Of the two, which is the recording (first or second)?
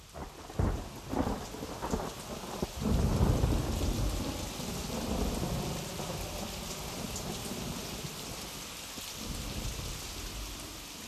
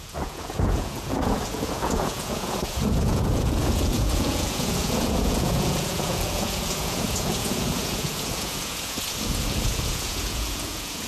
first